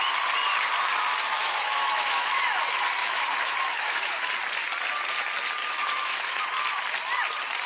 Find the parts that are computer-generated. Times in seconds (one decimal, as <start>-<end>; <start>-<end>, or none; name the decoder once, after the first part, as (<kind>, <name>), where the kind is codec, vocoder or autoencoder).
1.4-2.4 (autoencoder, DAC-VAE); 3.0-4.3; 5.6-6.4